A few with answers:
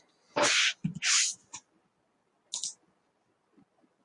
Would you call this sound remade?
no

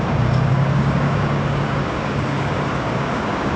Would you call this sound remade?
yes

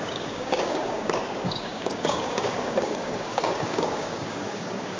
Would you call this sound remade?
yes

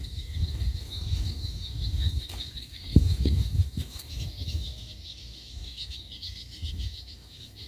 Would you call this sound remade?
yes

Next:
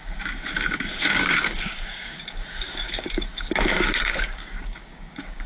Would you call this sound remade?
yes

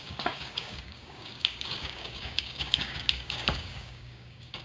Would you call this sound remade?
yes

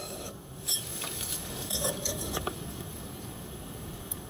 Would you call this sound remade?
yes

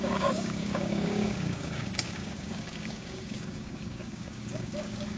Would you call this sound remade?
yes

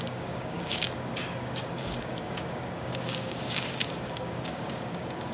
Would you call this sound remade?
yes